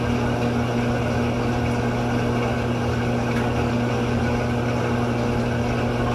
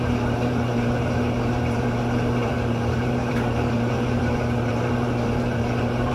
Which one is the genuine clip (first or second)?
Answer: first